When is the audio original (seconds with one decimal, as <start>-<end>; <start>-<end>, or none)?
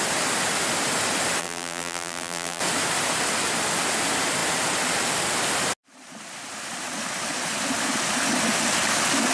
0.0-1.4; 2.6-9.3